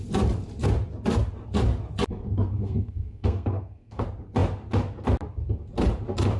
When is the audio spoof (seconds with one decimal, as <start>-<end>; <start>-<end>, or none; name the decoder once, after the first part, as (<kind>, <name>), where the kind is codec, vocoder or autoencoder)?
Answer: 2.2-4.0 (codec, SNAC)

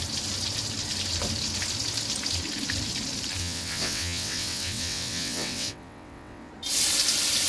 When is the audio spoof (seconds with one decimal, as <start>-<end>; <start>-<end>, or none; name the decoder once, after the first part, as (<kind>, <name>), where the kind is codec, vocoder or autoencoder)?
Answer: 3.4-6.5 (vocoder, WaveNeXt)

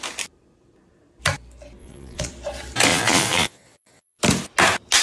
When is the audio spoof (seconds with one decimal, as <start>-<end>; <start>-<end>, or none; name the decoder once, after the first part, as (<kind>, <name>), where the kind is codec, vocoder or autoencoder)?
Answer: 1.8-2.3 (vocoder, Vocos); 2.9-4.2

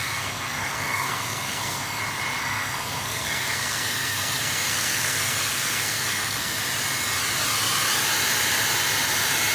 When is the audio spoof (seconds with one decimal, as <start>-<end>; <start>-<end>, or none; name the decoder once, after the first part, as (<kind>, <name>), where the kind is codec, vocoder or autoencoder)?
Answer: 0.0-2.0 (codec, SNAC); 2.4-6.6

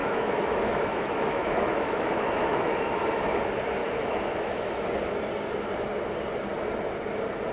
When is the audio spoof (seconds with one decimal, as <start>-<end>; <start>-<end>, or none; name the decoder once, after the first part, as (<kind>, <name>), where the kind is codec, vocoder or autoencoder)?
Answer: 0.0-3.4 (autoencoder, DAC-VAE); 3.8-4.9